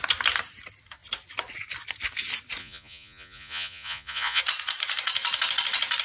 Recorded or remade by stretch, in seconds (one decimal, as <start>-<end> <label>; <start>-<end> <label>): 0.0-2.6 recorded; 2.6-4.4 remade; 4.4-6.0 recorded